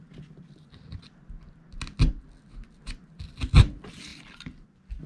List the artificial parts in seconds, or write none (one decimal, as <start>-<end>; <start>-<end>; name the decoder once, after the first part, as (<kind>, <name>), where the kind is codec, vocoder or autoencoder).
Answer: none

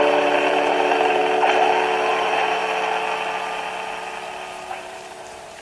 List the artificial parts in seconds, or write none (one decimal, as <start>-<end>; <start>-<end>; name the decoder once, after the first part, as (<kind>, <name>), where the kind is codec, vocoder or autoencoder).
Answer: 0.0-1.2 (vocoder, BigVGAN v2); 2.1-2.6; 4.7-5.6

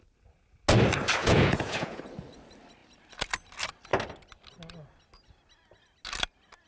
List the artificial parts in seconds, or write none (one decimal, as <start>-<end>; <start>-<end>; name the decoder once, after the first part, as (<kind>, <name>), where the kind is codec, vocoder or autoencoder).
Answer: 1.2-2.0 (vocoder, Vocos)

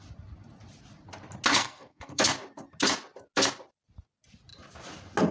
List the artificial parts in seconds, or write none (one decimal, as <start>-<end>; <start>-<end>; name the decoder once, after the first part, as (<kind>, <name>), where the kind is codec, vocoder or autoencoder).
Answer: 1.5-2.2 (codec, SNAC)

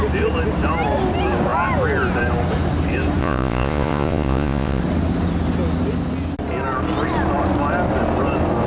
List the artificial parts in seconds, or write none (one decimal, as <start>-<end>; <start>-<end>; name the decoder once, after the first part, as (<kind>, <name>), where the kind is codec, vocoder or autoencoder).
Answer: 3.2-4.8 (vocoder, Vocos)